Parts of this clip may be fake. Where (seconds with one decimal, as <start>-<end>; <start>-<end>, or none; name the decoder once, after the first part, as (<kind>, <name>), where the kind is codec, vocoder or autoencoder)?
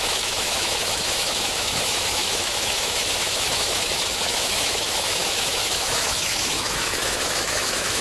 0.0-8.0 (autoencoder, DAC-VAE)